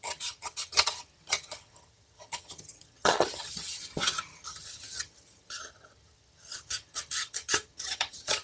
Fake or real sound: fake